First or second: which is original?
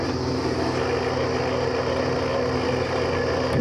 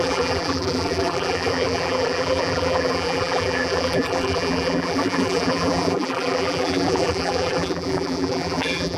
first